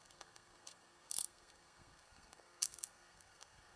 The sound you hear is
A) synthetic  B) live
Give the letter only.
A